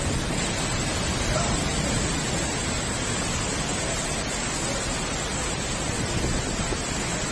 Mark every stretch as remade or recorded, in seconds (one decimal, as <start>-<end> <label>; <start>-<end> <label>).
0.0-7.3 recorded